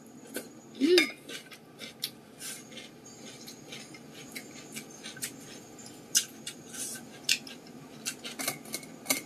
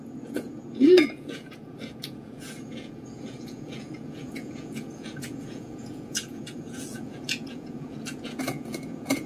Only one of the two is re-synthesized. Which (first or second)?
second